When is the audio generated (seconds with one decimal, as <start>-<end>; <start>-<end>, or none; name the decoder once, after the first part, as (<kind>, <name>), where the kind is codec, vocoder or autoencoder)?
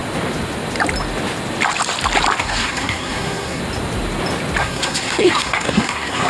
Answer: 2.4-3.6 (codec, SNAC); 4.6-6.3